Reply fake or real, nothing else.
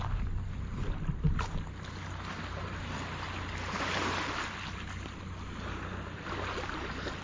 real